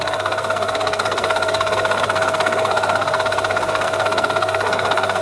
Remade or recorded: remade